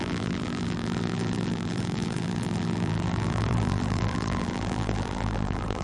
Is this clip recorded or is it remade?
remade